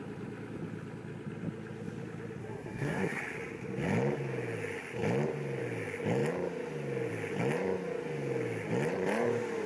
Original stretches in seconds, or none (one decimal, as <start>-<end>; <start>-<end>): 0.0-2.4; 3.2-9.7